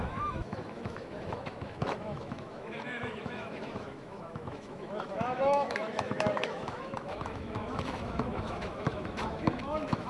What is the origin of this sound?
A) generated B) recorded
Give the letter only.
A